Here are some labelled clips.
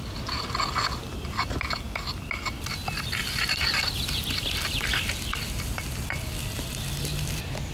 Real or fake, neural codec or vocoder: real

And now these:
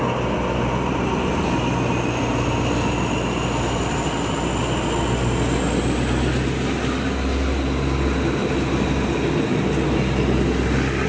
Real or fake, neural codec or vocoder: real